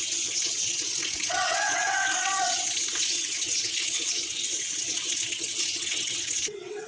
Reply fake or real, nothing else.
fake